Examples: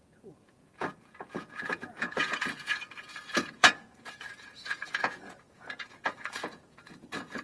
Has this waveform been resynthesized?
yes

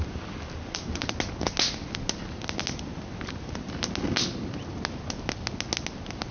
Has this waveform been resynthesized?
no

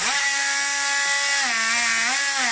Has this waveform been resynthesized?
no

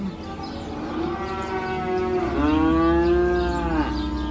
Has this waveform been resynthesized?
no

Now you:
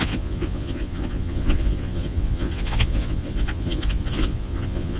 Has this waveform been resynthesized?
yes